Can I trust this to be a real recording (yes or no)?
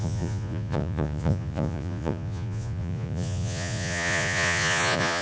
no